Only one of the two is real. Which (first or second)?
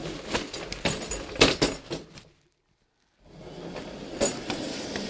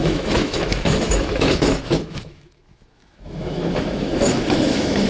first